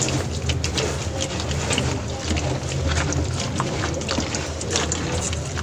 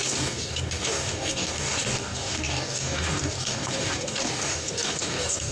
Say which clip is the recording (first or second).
first